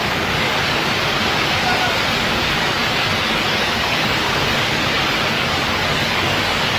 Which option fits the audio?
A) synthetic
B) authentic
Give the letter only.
A